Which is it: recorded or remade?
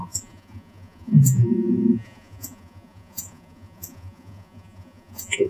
remade